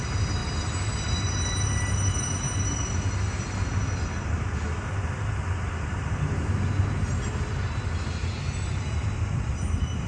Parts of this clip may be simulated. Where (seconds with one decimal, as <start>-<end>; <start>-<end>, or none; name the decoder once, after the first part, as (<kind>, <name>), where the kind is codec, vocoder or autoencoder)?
none